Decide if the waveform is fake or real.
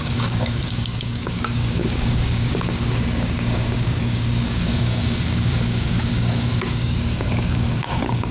fake